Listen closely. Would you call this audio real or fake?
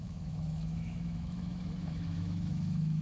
fake